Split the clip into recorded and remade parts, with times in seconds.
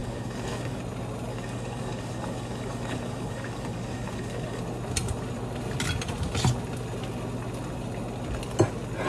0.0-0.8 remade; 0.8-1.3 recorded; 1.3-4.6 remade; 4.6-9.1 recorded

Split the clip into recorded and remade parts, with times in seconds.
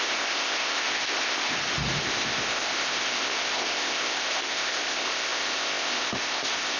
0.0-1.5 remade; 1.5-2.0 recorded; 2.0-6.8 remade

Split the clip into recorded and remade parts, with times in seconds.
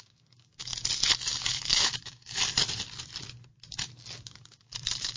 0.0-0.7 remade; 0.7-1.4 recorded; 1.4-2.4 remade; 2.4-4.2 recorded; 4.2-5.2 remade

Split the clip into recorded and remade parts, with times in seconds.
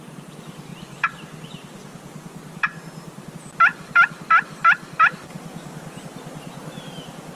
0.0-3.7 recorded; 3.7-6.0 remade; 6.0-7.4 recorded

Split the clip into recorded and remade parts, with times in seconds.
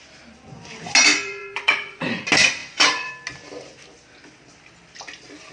0.0-1.1 recorded; 1.1-2.2 remade; 2.2-2.6 recorded; 2.6-3.1 remade; 3.1-5.5 recorded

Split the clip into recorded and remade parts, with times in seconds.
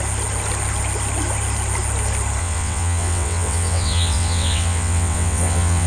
0.0-2.4 recorded; 2.4-5.9 remade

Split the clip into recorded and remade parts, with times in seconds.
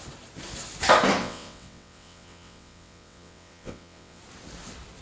0.0-1.2 recorded; 1.2-4.2 remade; 4.2-5.0 recorded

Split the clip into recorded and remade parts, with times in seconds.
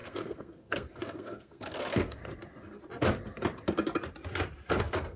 0.0-2.2 remade; 2.2-4.8 recorded; 4.8-5.2 remade